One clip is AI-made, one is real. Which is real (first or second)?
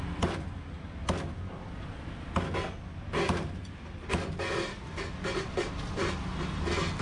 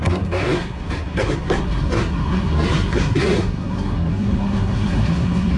first